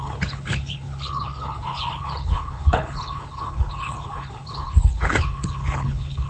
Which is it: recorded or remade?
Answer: remade